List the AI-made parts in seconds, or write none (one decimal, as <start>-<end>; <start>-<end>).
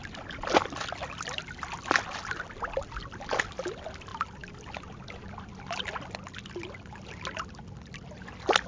none